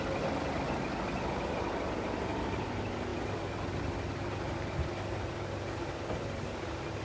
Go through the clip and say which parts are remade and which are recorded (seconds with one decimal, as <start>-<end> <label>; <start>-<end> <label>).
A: 0.0-7.0 recorded